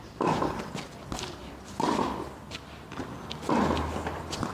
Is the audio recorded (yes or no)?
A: yes